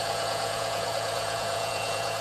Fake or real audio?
fake